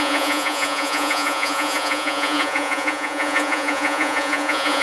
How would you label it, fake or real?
fake